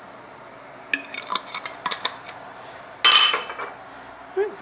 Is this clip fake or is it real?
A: real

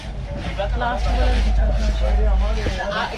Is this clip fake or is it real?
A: real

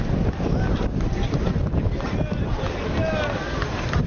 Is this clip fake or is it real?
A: real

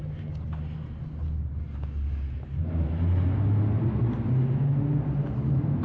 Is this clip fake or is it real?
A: real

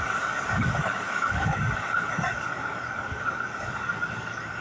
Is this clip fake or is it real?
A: fake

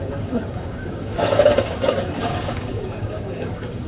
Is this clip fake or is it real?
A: fake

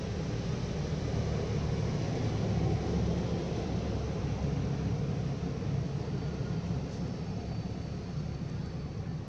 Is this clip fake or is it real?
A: real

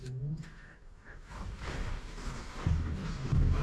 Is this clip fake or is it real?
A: fake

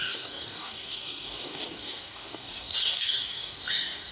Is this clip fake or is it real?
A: fake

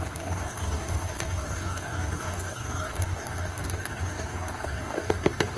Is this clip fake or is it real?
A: fake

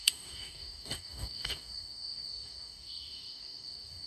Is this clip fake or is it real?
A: fake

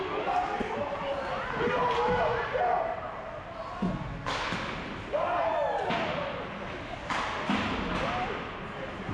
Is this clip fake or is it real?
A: real